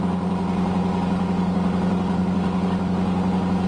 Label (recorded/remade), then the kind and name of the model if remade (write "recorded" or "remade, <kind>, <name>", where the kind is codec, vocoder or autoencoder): recorded